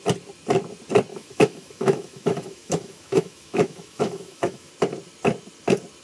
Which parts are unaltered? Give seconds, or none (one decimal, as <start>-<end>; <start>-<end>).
0.0-1.1; 4.7-6.0